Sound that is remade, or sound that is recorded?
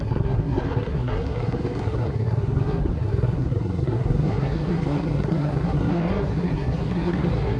remade